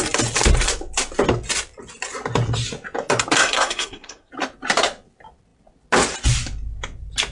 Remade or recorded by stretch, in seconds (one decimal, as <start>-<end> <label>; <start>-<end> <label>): 0.0-3.4 recorded; 3.4-4.3 remade; 4.3-7.3 recorded